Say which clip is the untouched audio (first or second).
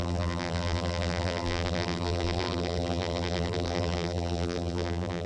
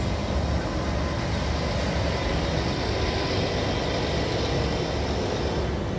second